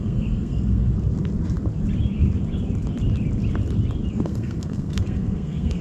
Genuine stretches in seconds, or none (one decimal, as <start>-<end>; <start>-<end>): 0.9-4.1